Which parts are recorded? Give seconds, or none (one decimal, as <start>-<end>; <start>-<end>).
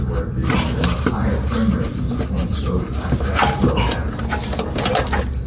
0.0-5.5